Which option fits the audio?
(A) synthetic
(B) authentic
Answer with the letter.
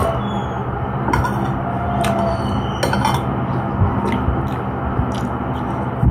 B